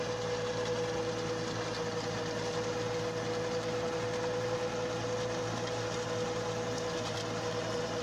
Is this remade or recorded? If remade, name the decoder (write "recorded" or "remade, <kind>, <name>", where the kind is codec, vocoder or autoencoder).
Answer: recorded